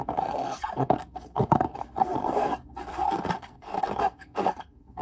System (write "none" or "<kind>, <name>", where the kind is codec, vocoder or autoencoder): codec, SNAC